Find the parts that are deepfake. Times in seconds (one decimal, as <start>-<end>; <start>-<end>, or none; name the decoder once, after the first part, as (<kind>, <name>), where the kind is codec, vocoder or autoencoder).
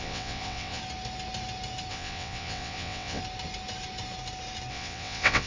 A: 0.0-0.8 (vocoder, WaveNeXt); 1.9-3.2; 4.7-5.5